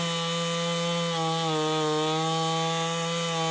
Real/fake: real